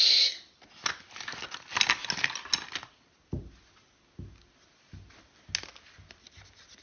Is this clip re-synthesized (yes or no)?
no